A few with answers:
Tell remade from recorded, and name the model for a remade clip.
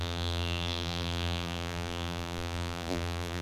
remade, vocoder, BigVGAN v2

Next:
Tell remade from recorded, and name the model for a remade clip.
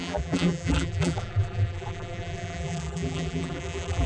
remade, vocoder, BigVGAN v2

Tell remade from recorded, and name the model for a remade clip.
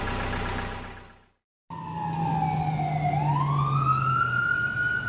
recorded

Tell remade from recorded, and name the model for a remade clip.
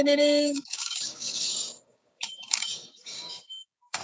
remade, codec, DAC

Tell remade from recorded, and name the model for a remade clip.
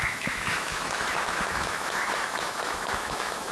remade, autoencoder, DAC-VAE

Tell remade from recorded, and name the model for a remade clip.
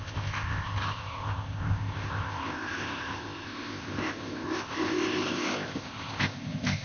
remade, codec, ZipCodec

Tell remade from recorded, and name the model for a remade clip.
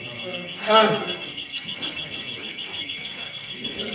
remade, codec, SNAC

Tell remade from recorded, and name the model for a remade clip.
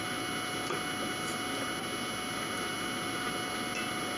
recorded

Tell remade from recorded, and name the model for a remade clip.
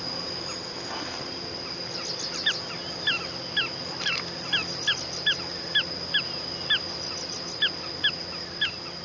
recorded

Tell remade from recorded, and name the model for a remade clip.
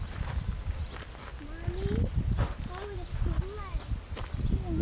recorded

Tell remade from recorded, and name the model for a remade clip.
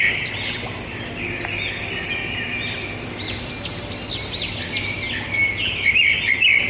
recorded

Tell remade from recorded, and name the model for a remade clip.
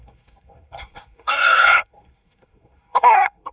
remade, codec, SNAC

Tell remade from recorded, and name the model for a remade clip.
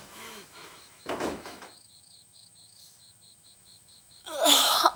remade, autoencoder, DAC-VAE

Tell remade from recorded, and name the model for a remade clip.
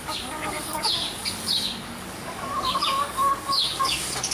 remade, codec, DAC